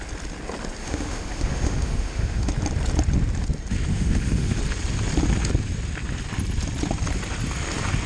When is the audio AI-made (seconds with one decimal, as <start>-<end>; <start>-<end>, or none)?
0.8-2.5; 3.9-4.6